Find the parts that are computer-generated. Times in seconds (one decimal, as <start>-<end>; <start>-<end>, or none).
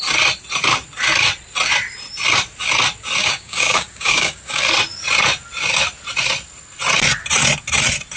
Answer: 3.2-4.6